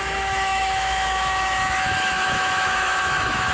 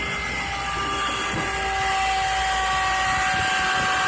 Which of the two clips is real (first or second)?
second